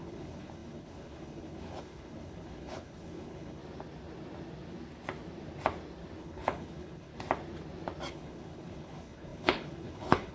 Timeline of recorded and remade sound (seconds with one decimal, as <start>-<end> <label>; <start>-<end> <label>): 0.0-3.6 remade; 3.6-6.2 recorded; 6.2-7.1 remade; 7.1-8.1 recorded; 8.1-10.3 remade